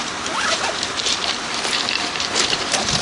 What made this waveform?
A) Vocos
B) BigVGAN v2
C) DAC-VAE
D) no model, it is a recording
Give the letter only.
B